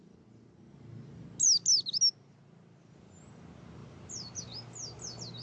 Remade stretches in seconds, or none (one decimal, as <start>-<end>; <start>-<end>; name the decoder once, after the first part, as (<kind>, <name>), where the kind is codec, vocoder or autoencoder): none